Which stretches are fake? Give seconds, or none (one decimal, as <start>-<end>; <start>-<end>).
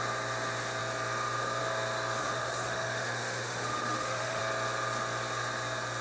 2.2-4.4